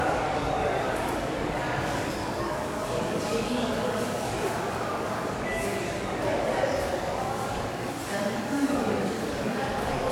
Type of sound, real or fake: fake